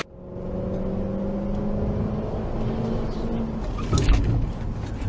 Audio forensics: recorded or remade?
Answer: recorded